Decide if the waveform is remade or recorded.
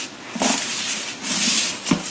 recorded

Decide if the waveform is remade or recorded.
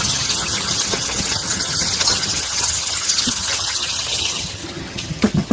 remade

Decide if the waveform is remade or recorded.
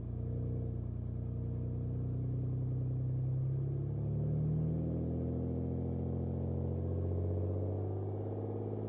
recorded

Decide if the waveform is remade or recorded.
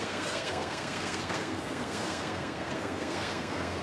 remade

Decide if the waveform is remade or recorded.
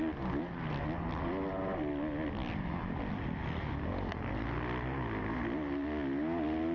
recorded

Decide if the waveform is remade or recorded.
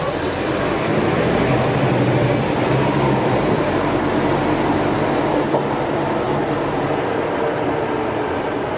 recorded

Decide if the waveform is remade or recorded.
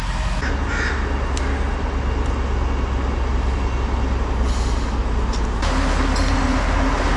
recorded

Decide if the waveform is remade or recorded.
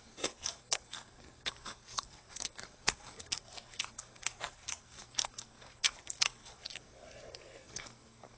remade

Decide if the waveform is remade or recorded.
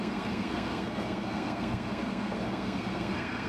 remade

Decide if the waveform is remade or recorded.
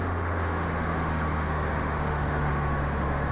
remade